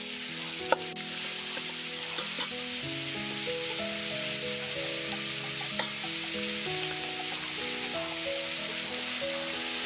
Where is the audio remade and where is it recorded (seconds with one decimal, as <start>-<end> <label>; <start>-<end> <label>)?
0.0-9.9 recorded